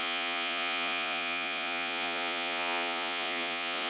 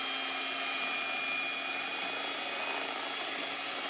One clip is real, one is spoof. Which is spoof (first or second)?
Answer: first